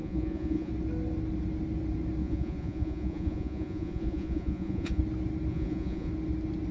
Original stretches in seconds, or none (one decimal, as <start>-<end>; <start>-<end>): 0.7-2.2; 5.0-5.5; 6.1-6.7